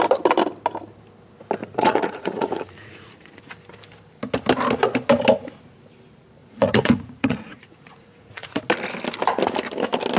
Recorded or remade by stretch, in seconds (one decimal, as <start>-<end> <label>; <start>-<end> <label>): 0.0-1.6 recorded; 1.6-3.5 remade; 3.5-6.4 recorded; 6.4-8.6 remade; 8.6-10.2 recorded